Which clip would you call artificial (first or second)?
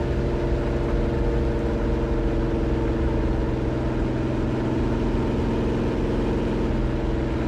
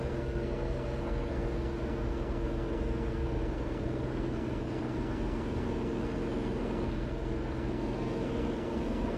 second